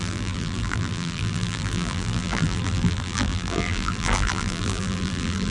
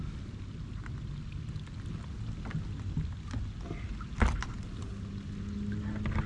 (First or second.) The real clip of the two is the second